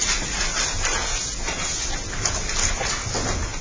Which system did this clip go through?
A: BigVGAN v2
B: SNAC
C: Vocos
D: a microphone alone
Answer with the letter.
D